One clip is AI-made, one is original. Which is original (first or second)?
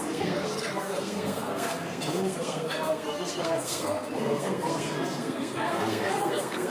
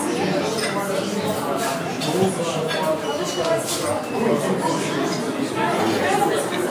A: second